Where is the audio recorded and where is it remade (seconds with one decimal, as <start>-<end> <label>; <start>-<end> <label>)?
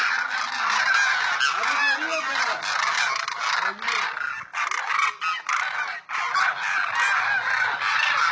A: 0.0-8.3 recorded